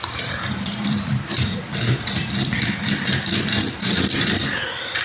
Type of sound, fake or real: fake